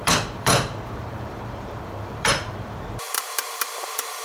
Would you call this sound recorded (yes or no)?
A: no